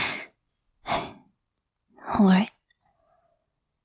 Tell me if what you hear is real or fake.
real